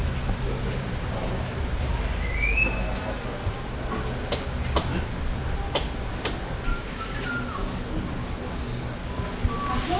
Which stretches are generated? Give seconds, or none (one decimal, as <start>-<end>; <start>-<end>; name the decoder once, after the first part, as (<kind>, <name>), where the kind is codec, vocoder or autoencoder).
6.7-7.3 (codec, DAC)